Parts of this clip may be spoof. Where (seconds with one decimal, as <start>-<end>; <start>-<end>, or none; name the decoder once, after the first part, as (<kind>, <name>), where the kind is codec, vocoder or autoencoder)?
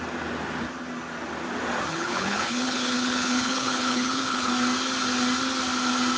1.9-4.5 (codec, HILCodec)